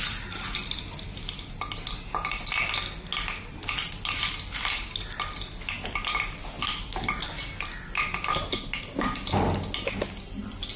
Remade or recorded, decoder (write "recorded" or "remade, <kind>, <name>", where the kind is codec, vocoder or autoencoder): recorded